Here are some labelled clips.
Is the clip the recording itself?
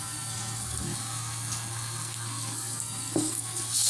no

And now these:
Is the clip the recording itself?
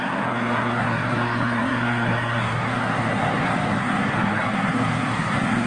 no